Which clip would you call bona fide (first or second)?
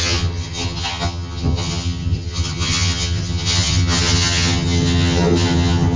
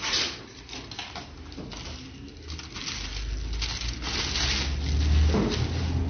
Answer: second